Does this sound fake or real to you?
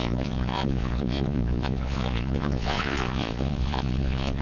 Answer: fake